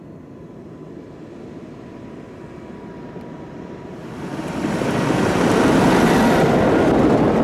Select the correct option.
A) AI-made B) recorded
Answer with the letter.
B